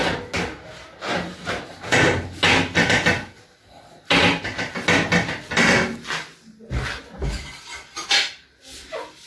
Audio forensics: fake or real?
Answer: real